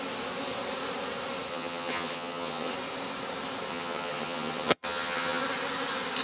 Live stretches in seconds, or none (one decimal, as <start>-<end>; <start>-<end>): 0.0-1.5; 2.7-3.7; 5.4-6.2